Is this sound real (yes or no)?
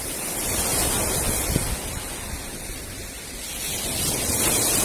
yes